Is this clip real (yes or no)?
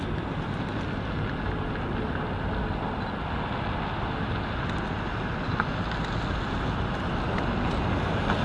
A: yes